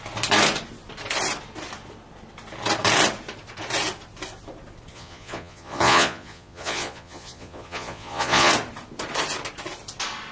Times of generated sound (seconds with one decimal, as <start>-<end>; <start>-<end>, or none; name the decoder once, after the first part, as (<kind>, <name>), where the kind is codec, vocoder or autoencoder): 4.9-8.5 (vocoder, Vocos)